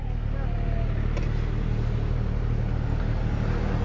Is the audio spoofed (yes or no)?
no